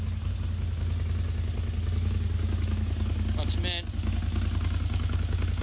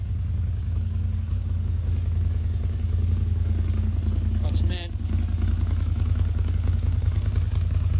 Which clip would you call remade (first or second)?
second